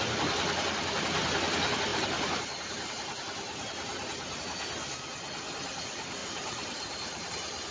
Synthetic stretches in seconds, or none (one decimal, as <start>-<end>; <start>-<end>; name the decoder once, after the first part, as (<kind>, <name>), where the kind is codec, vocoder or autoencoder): 1.9-4.4 (vocoder, BigVGAN v2); 6.2-7.3